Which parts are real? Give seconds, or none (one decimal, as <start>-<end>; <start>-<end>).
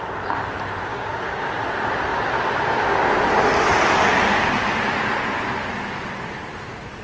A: 0.0-0.9; 1.5-7.0